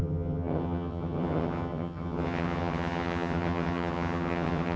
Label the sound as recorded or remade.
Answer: remade